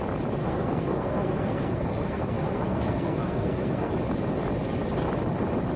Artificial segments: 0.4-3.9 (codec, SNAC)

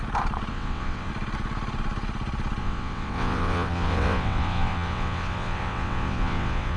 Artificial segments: 0.5-1.1 (vocoder, WaveNeXt); 2.6-6.8

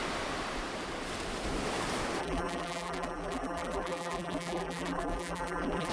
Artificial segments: 2.2-5.9 (vocoder, BigVGAN v2)

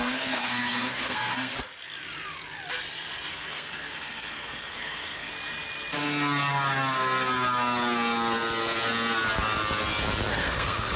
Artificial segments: 0.0-1.5 (codec, SNAC); 3.3-5.3; 10.3-11.0

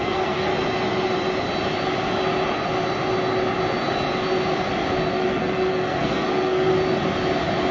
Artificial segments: 0.0-0.5 (codec, SNAC); 5.1-6.7

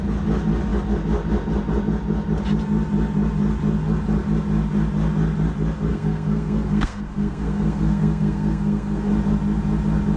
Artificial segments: 5.9-9.1 (codec, SNAC)